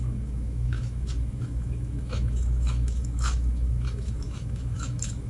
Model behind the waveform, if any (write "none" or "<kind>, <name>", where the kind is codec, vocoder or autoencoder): autoencoder, DAC-VAE